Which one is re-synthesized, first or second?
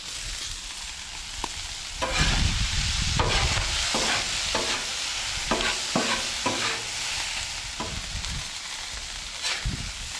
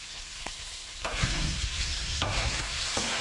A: second